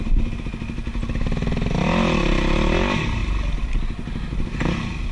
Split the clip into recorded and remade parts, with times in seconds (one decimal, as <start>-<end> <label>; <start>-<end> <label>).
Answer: 0.0-5.1 recorded